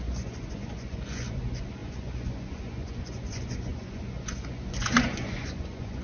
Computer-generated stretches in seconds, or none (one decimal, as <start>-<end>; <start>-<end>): 0.0-6.0